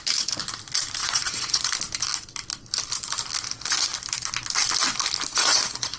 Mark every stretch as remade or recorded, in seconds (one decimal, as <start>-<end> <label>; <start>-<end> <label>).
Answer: 0.0-1.0 recorded; 1.0-1.7 remade; 1.7-5.3 recorded; 5.3-6.0 remade